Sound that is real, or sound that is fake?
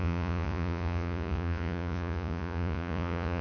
fake